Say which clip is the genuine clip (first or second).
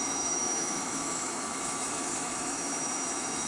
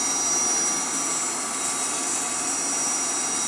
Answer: second